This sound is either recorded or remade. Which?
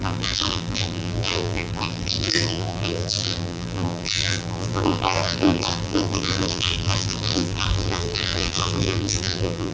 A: remade